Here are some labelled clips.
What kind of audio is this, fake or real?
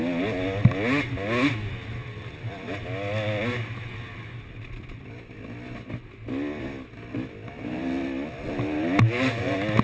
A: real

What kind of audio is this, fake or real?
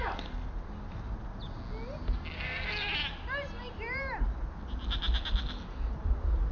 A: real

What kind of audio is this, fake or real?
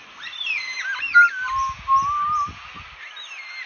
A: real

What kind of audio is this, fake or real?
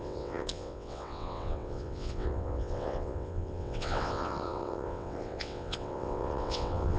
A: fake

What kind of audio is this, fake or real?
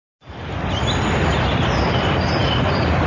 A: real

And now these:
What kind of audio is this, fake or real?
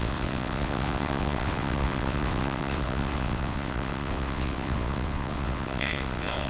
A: fake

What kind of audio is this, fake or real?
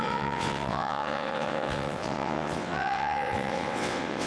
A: fake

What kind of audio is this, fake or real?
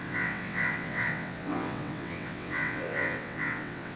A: fake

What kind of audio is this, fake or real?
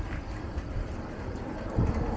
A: real